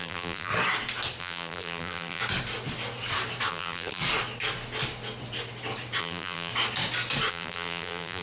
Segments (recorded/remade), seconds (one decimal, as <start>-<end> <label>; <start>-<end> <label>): 0.0-0.5 remade; 0.5-1.2 recorded; 1.2-2.2 remade; 2.2-3.5 recorded; 3.5-4.0 remade; 4.0-6.0 recorded; 6.0-6.5 remade; 6.5-7.3 recorded; 7.3-8.2 remade